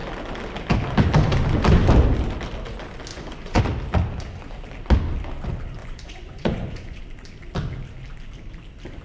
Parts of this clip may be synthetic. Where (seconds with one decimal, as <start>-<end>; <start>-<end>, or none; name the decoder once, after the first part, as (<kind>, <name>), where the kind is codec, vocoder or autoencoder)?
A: 3.1-3.6 (vocoder, Vocos); 5.8-7.0